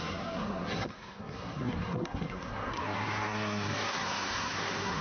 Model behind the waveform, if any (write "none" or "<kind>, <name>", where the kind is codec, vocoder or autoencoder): codec, SNAC